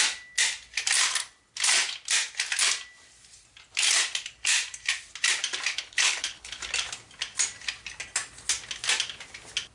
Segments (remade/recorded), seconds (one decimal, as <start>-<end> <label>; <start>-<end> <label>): 0.0-5.7 recorded; 5.7-6.6 remade; 6.6-9.7 recorded